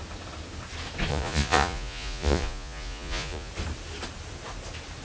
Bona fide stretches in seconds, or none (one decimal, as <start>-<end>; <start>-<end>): 0.0-1.1; 3.5-5.0